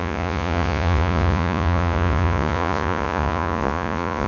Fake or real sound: fake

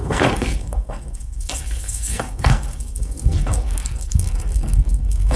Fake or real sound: fake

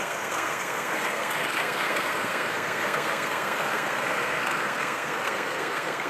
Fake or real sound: fake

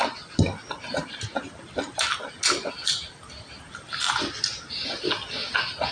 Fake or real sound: real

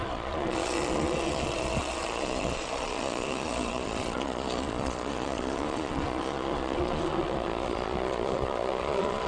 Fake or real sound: fake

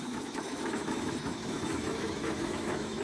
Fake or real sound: fake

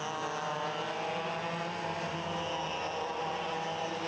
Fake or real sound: real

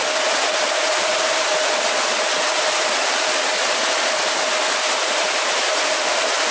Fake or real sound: real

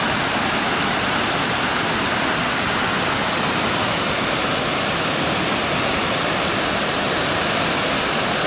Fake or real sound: real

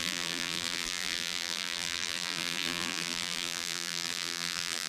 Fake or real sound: fake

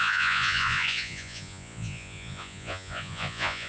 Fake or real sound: fake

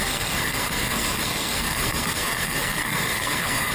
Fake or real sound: fake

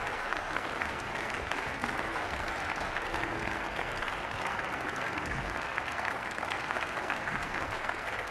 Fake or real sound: fake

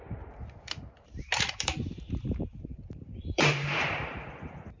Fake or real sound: fake